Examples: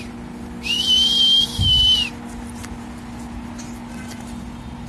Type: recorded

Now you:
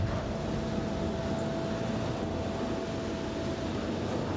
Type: recorded